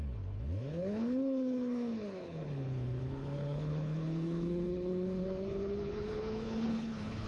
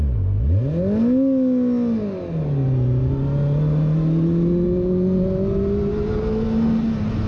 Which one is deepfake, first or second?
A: first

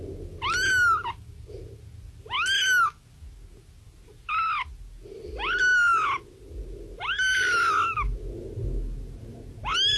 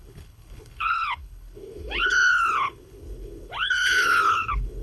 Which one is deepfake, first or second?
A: second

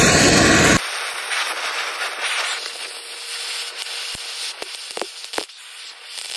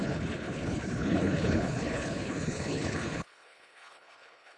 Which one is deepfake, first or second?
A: second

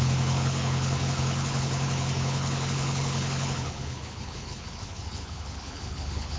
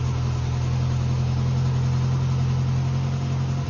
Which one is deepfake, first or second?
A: first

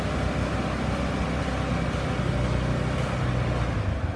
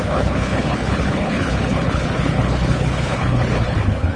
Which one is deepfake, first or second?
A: second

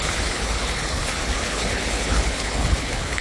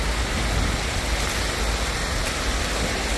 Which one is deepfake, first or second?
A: first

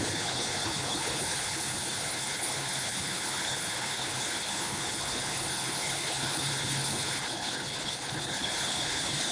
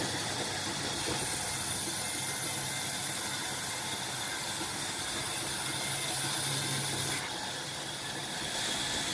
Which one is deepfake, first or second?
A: first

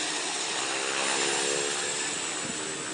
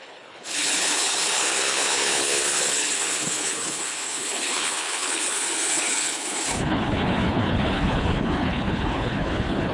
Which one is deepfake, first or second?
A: second